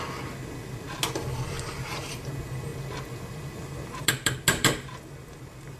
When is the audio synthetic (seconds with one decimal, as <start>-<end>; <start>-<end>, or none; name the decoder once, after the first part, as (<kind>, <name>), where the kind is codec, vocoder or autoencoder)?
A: none